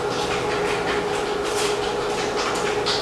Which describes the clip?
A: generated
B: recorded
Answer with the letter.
B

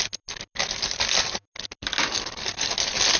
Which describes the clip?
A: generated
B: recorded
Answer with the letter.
B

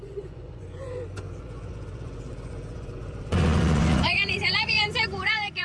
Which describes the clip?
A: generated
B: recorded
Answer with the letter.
A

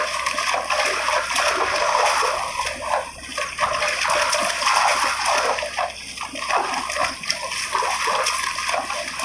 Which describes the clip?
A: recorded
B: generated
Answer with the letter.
A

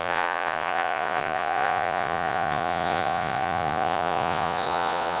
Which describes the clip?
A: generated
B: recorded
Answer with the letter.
A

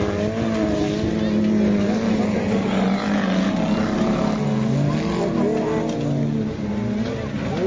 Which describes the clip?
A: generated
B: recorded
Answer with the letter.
B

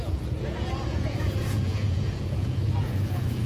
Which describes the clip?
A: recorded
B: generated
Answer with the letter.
B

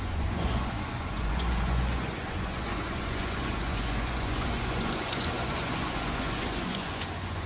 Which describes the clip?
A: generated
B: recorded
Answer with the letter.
A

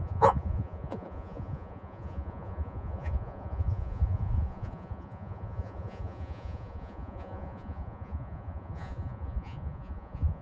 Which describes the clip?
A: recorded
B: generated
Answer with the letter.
B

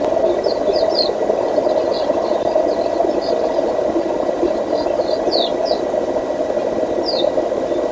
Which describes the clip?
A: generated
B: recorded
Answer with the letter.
B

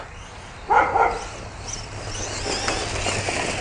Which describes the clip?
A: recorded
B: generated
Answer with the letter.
A